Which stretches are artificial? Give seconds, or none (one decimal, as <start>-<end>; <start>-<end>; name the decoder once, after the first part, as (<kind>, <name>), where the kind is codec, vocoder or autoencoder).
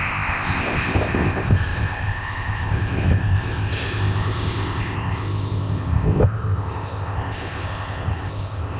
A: 0.0-8.8 (codec, ZipCodec)